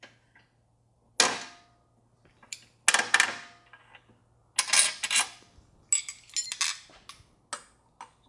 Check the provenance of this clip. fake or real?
real